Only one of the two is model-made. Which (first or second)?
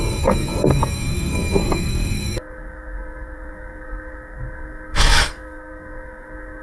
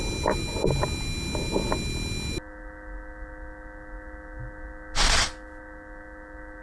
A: first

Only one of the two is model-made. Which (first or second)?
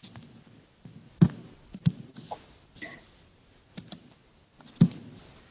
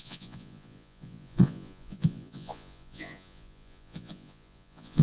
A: second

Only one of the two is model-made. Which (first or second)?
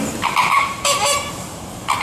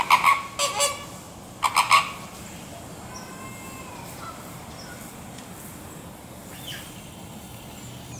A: first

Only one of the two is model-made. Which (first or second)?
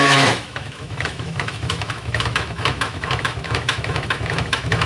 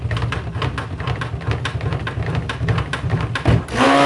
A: first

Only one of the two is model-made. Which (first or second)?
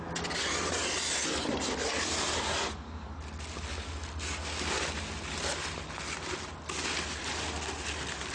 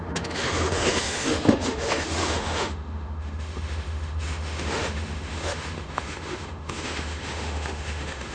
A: second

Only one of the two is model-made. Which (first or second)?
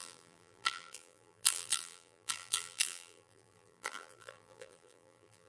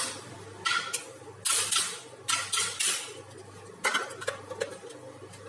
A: first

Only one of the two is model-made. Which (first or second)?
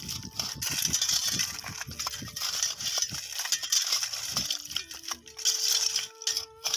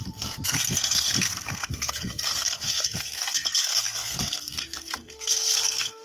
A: second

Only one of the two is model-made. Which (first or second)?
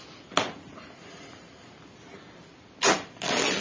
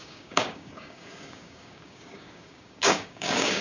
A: second